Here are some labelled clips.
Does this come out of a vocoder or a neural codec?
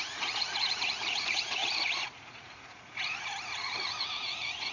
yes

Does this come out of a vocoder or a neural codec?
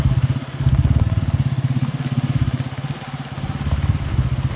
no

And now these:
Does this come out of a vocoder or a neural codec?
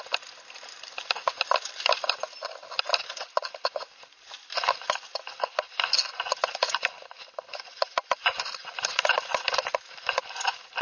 no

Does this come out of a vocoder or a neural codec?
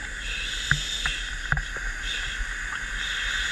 no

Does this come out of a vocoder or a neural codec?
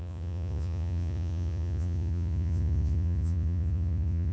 yes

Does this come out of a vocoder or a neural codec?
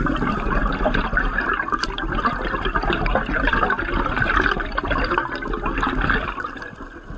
no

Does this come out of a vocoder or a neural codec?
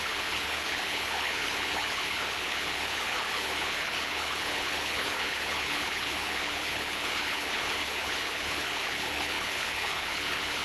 yes